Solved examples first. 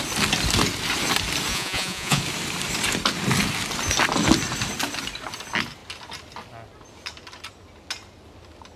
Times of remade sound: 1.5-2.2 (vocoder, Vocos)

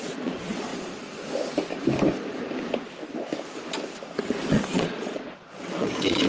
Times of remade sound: 0.0-0.7 (vocoder, Vocos); 4.5-6.3

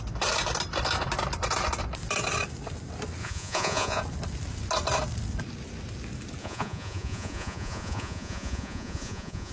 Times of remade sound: 3.2-4.0 (vocoder, Vocos); 6.4-9.5

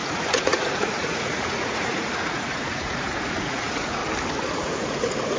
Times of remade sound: 0.0-4.0 (vocoder, Vocos); 4.5-5.4

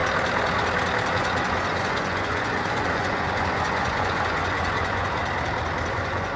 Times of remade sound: 1.1-5.2 (vocoder, Vocos); 5.9-6.4

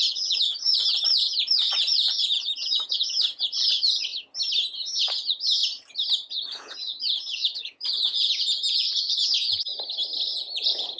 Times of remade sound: 0.0-4.1 (vocoder, Vocos); 5.0-5.6; 6.3-9.7; 10.3-11.0

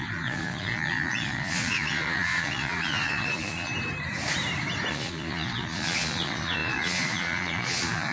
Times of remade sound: 0.0-3.7 (vocoder, Vocos); 4.9-8.1

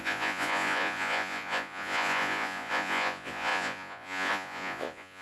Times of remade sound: 0.0-5.2 (vocoder, Vocos)